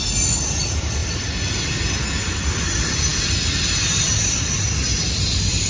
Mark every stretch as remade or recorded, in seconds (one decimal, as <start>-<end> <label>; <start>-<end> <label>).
0.0-5.7 recorded